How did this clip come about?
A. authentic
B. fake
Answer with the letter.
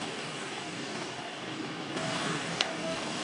B